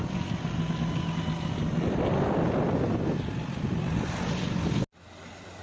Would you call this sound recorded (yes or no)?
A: yes